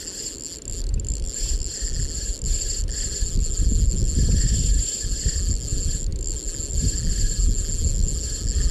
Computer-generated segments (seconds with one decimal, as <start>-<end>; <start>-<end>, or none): none

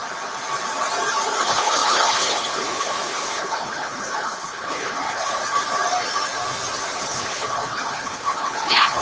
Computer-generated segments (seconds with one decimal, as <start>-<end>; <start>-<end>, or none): 1.4-5.4; 7.0-9.0

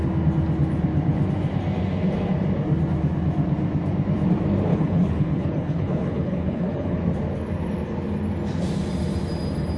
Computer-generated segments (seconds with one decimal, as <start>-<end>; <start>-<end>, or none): 4.7-7.0

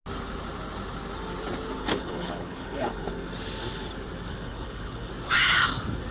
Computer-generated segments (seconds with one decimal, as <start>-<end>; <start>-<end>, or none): 1.8-3.1; 4.3-5.1

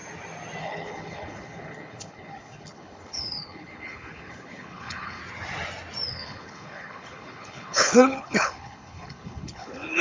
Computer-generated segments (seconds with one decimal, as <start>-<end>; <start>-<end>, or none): 0.6-5.2; 6.1-10.0

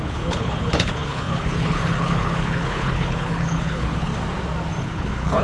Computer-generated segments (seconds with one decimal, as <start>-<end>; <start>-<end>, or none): 0.0-4.1; 4.8-5.4

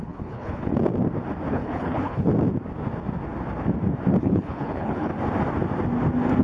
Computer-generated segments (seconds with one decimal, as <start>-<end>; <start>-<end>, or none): 0.0-0.7; 1.5-2.3; 4.2-5.1

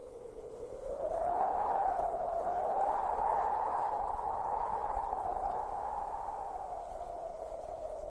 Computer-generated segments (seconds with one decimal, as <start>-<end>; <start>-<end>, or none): 0.0-5.6; 6.8-8.1